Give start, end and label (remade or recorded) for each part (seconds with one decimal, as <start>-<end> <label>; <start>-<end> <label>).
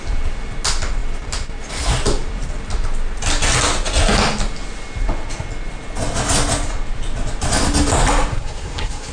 0.0-8.3 recorded; 8.3-9.1 remade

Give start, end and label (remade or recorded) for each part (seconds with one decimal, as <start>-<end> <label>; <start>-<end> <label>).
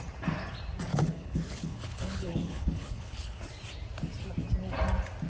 0.0-0.9 recorded; 0.9-3.4 remade; 3.4-5.3 recorded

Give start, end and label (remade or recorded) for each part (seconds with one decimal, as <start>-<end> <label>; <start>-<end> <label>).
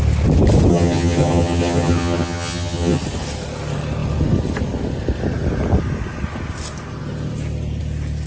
0.0-0.7 recorded; 0.7-3.0 remade; 3.0-8.3 recorded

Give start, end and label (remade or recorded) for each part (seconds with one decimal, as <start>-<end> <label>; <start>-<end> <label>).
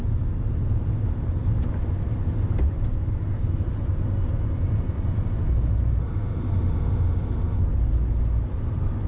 0.0-6.0 recorded; 6.0-7.6 remade; 7.6-9.1 recorded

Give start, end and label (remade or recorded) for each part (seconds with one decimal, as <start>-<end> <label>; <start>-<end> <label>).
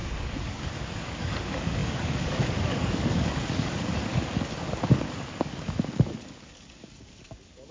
0.0-7.7 remade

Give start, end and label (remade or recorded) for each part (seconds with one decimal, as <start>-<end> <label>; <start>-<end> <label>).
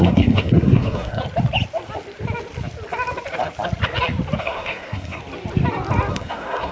0.0-1.2 remade; 1.2-4.4 recorded; 4.4-5.2 remade; 5.2-6.1 recorded; 6.1-6.7 remade